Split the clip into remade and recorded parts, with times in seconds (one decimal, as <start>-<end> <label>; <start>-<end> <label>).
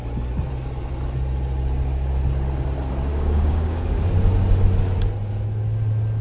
0.0-3.1 recorded; 3.1-4.0 remade; 4.0-6.2 recorded